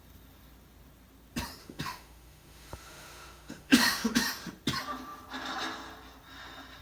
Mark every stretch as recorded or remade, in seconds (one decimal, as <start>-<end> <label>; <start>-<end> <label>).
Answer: 0.0-1.6 recorded; 1.6-4.2 remade; 4.2-6.8 recorded